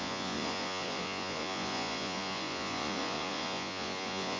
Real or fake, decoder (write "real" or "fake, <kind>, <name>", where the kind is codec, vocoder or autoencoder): fake, vocoder, Vocos